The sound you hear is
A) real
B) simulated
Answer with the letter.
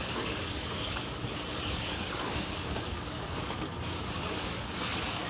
B